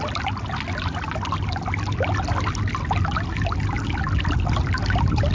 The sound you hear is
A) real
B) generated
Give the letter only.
A